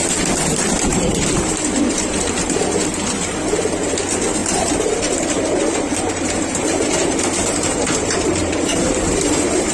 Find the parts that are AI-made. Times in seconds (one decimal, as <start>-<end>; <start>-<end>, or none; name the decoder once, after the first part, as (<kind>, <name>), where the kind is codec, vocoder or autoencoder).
0.9-2.6 (vocoder, BigVGAN v2); 4.4-9.7